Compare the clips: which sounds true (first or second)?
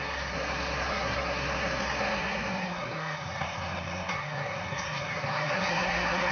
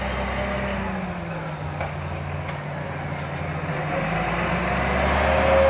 second